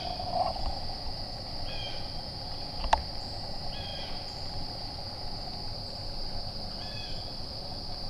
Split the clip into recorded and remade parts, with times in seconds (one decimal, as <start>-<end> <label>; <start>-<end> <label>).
0.0-8.1 recorded